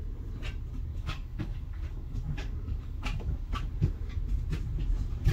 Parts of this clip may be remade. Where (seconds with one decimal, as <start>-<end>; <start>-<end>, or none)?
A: 0.9-4.1